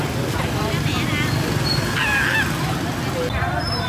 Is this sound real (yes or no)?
yes